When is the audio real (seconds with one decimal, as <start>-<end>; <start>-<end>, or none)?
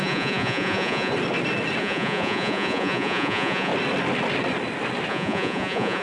1.1-1.8; 3.7-5.1